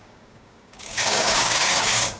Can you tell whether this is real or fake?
fake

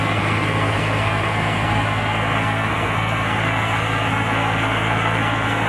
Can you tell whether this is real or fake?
fake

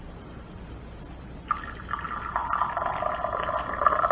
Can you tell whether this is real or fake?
real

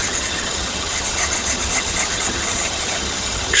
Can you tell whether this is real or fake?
fake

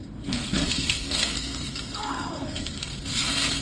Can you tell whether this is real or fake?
fake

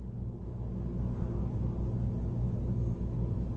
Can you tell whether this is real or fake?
real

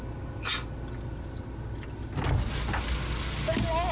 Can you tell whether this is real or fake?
real